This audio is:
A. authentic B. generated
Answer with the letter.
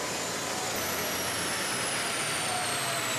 A